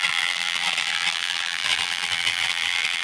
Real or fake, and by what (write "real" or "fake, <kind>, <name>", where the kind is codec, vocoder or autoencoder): fake, vocoder, BigVGAN v2